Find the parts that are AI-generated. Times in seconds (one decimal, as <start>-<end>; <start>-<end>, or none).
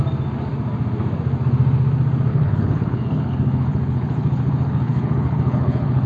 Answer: 2.3-6.1